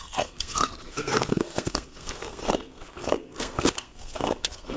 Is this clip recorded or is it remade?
remade